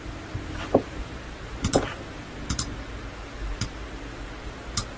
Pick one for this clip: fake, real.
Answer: fake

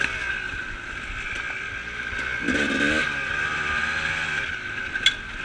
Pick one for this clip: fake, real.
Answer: real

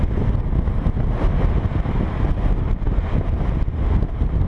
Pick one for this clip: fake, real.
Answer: real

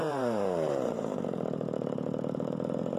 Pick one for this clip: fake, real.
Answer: fake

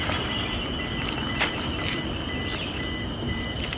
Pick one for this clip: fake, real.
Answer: real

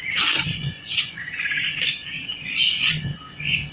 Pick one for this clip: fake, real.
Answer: fake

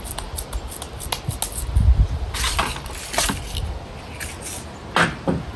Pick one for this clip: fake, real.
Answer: real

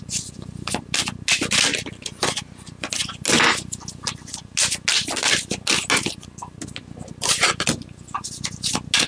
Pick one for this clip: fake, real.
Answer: real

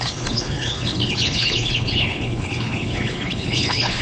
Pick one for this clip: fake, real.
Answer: fake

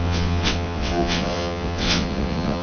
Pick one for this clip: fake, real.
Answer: fake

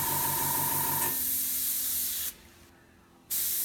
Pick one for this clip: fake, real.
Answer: real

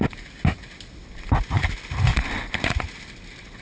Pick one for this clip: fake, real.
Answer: real